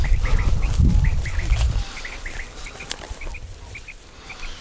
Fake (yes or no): no